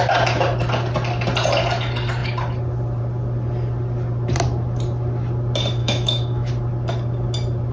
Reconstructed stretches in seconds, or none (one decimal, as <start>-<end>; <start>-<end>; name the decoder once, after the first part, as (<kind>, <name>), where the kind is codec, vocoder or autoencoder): 5.8-6.5 (autoencoder, DAC-VAE)